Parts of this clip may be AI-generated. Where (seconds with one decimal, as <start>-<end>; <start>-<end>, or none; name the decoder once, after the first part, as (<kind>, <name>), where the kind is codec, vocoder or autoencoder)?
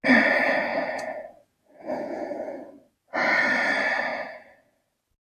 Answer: 0.7-2.7 (vocoder, Vocos); 4.1-4.9